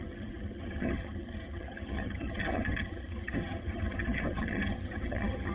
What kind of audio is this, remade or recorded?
remade